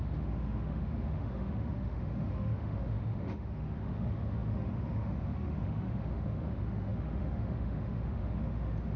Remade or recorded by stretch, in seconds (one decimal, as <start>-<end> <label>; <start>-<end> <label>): 0.0-9.0 remade